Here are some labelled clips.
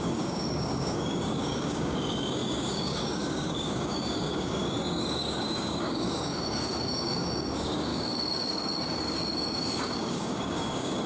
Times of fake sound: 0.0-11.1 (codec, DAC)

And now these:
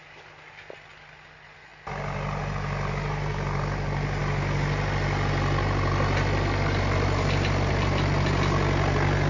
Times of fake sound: none

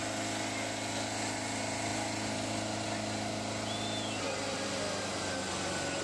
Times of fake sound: none

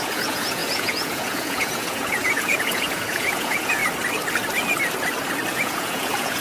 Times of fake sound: 0.0-3.8 (vocoder, Vocos); 5.5-6.4

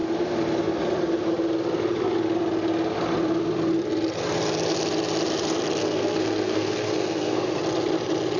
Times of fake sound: 5.8-7.6 (codec, SNAC)

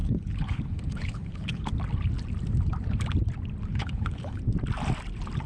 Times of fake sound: 0.0-1.7 (codec, HILCodec); 3.7-4.4